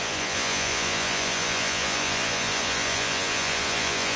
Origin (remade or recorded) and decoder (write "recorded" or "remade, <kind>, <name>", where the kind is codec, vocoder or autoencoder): remade, vocoder, Vocos